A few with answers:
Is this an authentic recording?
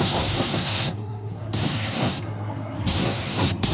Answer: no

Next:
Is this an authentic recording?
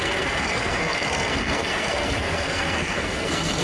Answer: no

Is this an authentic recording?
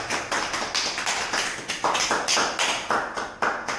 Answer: yes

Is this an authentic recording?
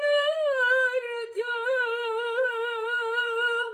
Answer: no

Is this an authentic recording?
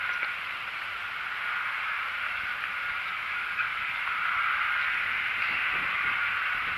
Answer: yes